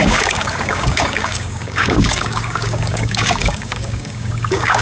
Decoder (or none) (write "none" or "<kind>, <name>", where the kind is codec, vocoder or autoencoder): codec, DAC